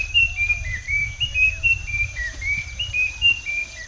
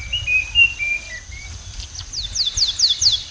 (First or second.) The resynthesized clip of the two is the first